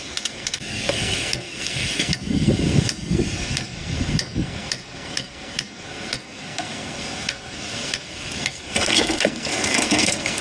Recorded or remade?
remade